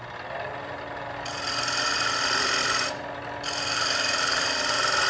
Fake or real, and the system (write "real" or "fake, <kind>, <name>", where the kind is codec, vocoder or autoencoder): real